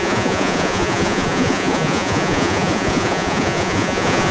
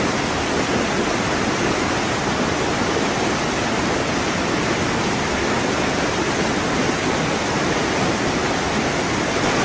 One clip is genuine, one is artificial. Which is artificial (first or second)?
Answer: first